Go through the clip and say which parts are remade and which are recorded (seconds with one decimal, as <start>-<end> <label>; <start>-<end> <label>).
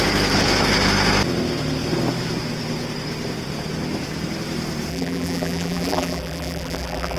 0.0-4.9 recorded; 4.9-7.2 remade